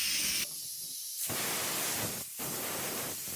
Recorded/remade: recorded